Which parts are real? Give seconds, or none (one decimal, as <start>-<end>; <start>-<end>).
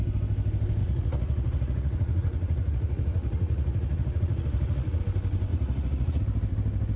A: 0.0-0.8; 5.0-5.5; 6.2-7.0